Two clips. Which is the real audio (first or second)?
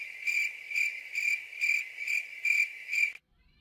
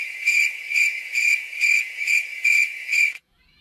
first